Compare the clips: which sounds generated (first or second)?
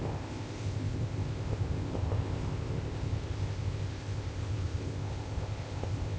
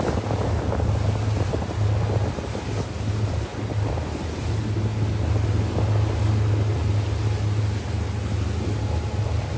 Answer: first